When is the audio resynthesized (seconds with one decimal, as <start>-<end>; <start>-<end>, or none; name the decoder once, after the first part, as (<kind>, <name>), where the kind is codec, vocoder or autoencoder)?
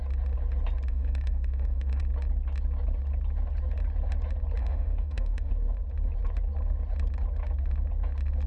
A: 0.9-2.0 (autoencoder, DAC-VAE); 4.6-5.5